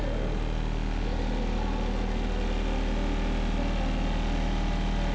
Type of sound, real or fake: real